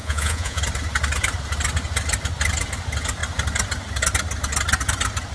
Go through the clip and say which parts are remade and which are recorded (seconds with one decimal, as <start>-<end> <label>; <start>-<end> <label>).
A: 0.0-0.6 remade; 0.6-5.3 recorded